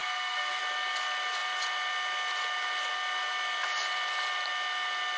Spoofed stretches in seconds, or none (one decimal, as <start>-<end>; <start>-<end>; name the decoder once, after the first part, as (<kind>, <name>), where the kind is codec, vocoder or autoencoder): 0.0-0.6 (codec, SNAC)